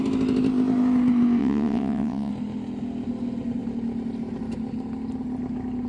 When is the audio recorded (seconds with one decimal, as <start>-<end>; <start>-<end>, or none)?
0.0-1.4; 2.3-5.9